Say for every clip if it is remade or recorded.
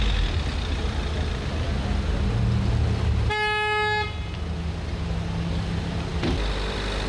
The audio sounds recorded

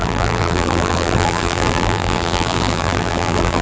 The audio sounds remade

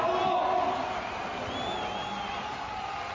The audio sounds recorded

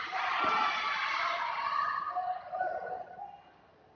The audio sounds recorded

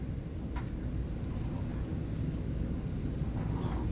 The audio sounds recorded